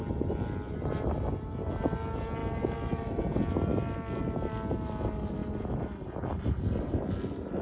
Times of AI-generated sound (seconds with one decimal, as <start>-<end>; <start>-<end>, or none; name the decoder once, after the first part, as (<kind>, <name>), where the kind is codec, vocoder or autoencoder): none